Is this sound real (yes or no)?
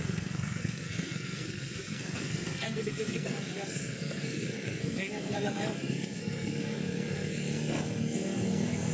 no